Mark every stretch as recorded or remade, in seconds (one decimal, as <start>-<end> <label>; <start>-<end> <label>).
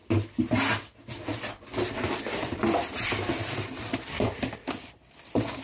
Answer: 0.0-5.6 recorded